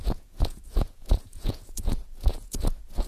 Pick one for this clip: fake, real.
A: fake